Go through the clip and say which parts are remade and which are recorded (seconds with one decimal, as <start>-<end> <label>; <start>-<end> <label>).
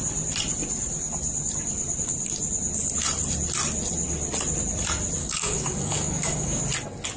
0.0-5.2 recorded; 5.2-6.6 remade; 6.6-7.2 recorded